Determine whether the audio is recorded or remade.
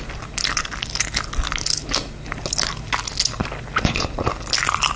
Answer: recorded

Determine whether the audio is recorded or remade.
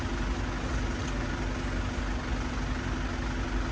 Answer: recorded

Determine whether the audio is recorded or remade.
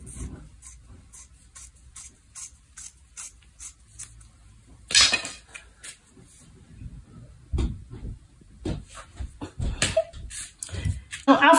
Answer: recorded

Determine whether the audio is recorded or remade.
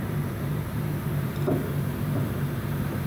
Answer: remade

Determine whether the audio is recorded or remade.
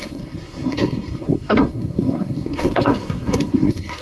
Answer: remade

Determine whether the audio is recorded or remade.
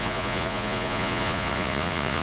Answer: remade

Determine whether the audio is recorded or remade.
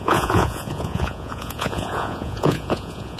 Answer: remade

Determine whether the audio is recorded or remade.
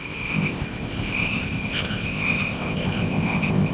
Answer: remade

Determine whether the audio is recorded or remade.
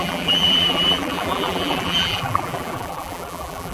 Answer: remade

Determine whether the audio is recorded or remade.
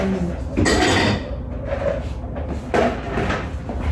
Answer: recorded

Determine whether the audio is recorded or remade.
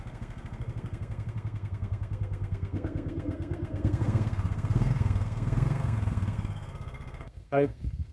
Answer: remade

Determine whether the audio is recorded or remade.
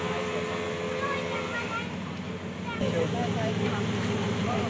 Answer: recorded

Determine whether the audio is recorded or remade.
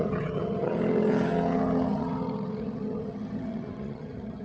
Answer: remade